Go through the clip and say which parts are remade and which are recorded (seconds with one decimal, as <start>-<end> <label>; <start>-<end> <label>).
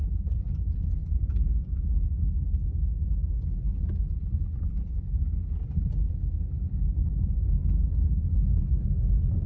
0.0-7.4 recorded; 7.4-7.9 remade; 7.9-9.5 recorded